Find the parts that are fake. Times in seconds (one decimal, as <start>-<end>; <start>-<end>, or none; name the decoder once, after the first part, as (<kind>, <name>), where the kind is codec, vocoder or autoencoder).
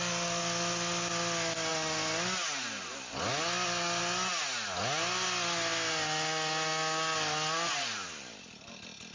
none